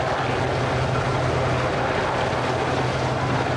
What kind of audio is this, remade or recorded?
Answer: recorded